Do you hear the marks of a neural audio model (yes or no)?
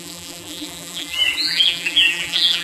yes